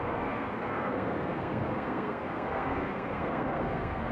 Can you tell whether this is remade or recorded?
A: remade